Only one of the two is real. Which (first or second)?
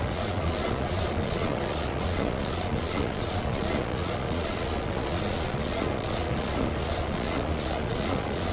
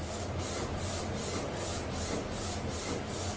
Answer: second